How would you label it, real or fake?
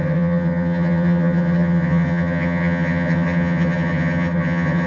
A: fake